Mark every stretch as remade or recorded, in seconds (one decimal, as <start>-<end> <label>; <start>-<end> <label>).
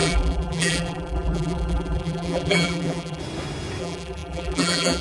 0.0-3.2 remade; 3.2-3.8 recorded; 3.8-5.0 remade